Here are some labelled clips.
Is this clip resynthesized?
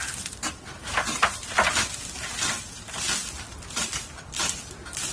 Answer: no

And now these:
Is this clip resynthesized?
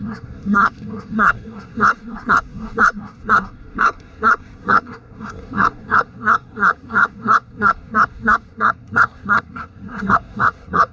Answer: yes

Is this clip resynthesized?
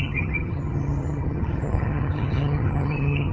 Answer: yes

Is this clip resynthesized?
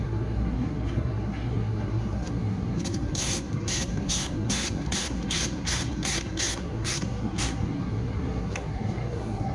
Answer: yes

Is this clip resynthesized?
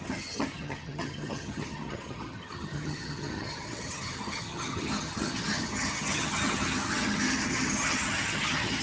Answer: yes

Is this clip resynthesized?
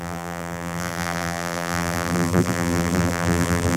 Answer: yes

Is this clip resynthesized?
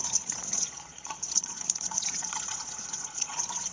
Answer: yes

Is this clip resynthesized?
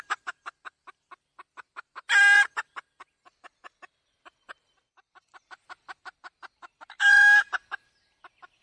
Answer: no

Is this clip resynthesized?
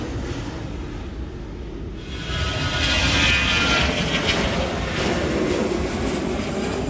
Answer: no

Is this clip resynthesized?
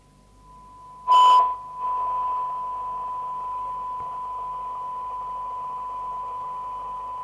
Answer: no